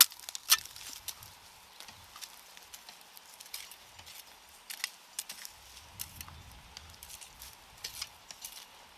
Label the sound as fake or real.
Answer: real